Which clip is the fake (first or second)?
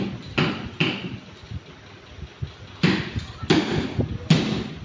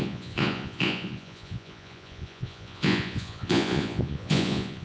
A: second